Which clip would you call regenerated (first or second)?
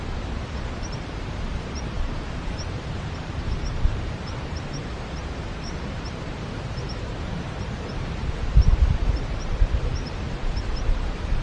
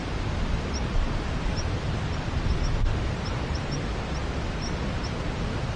first